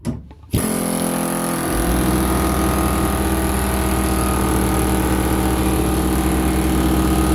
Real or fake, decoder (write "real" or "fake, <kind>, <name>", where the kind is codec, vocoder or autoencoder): real